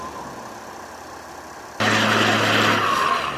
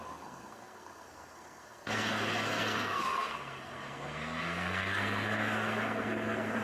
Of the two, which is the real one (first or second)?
first